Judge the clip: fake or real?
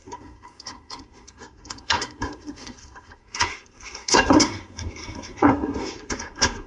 fake